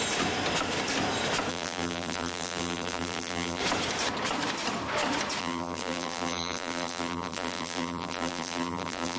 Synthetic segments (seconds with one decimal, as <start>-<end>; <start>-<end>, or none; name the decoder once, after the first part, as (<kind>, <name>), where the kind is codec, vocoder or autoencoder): 1.5-3.6 (vocoder, BigVGAN v2); 5.4-9.2